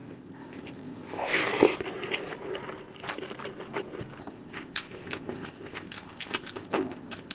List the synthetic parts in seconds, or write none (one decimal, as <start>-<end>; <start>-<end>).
0.0-1.4; 4.2-7.3

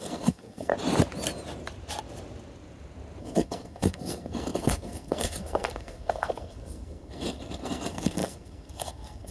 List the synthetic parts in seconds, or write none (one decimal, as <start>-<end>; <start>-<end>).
0.0-0.7; 3.2-9.3

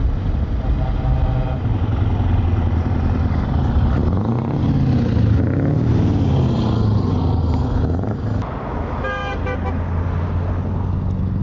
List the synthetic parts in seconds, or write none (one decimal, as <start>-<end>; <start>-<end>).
none